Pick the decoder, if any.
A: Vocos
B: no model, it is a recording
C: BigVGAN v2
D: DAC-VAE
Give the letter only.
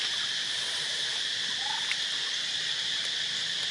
B